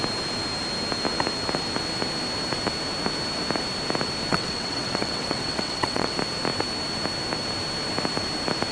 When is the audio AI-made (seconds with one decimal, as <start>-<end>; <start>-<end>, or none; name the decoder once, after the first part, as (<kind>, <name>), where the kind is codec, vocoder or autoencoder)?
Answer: 4.3-6.1 (vocoder, WaveNeXt)